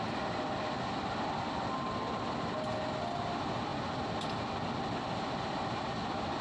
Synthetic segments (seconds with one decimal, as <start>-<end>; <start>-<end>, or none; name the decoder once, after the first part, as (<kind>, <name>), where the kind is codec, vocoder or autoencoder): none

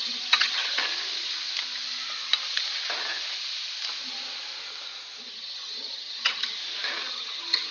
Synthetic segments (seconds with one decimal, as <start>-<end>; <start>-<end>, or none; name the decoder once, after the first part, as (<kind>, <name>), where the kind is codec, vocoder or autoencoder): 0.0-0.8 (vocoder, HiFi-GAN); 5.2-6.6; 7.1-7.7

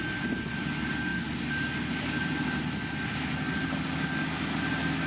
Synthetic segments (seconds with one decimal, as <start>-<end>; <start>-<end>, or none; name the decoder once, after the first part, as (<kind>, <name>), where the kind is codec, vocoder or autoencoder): none

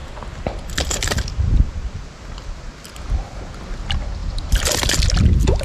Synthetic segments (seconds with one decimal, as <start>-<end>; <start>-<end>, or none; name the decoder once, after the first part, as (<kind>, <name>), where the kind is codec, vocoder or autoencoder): 0.0-2.7 (vocoder, BigVGAN v2); 4.2-5.1

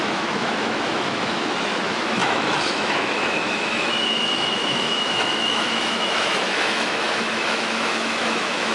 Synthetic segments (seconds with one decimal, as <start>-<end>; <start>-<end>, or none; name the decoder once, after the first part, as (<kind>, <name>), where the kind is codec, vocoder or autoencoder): 0.0-8.7 (autoencoder, DAC-VAE)

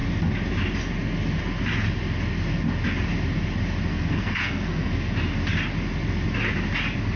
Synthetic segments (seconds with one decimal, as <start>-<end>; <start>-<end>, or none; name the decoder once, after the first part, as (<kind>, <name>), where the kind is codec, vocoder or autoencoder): 3.9-4.9 (codec, SNAC)

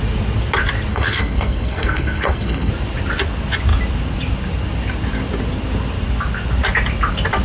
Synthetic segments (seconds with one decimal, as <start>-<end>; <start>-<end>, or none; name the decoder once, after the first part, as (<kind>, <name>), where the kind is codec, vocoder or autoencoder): 0.9-2.7 (codec, SNAC)

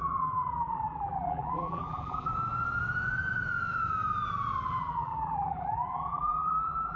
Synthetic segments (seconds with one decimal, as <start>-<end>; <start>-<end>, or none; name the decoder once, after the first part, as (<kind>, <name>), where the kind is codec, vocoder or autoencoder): 0.0-2.3 (vocoder, BigVGAN v2); 4.7-7.0